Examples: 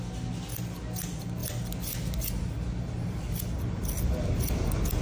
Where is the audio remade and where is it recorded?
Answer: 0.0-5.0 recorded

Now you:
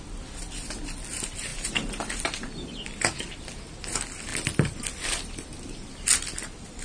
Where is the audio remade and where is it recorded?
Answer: 0.0-6.8 recorded

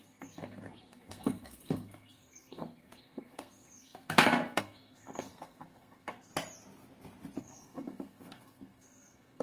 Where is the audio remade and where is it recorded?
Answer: 0.0-6.3 remade; 6.3-7.4 recorded; 7.4-9.4 remade

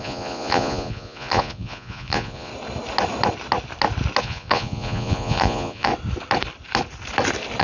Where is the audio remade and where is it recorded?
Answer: 0.0-2.5 remade; 2.5-4.2 recorded; 4.2-5.9 remade; 5.9-7.6 recorded

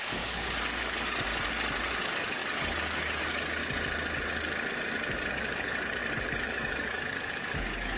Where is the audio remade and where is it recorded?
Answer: 0.0-1.3 remade; 1.3-1.9 recorded; 1.9-3.6 remade; 3.6-5.3 recorded; 5.3-8.0 remade

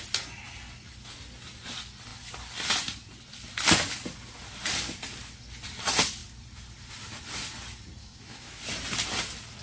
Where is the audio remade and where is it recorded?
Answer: 0.0-8.0 recorded; 8.0-8.6 remade; 8.6-9.6 recorded

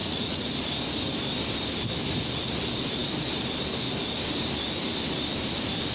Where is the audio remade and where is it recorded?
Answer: 0.0-0.5 remade; 0.5-5.9 recorded